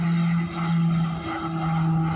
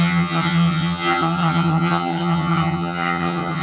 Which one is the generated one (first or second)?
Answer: second